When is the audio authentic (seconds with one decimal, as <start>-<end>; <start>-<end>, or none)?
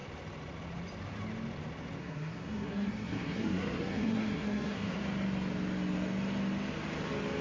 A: 0.0-2.0; 5.0-7.4